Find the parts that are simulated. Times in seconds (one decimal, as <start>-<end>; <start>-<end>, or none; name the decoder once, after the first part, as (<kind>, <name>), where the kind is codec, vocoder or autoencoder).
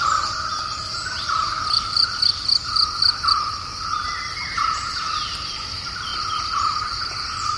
0.0-7.6 (vocoder, BigVGAN v2)